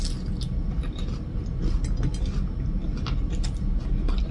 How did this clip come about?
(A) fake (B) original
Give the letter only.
B